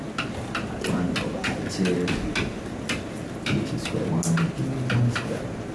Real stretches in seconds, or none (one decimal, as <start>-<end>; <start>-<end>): 0.0-5.7